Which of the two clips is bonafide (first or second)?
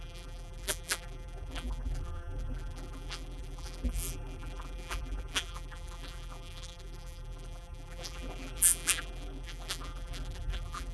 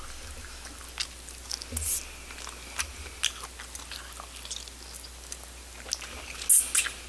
second